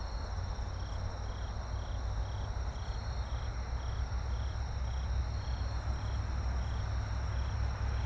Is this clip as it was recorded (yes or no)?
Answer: yes